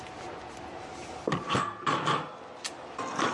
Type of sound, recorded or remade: recorded